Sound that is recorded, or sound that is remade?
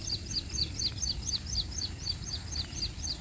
remade